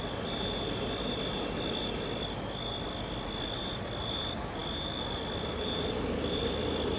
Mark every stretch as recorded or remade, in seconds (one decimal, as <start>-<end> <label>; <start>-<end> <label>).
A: 0.0-7.0 recorded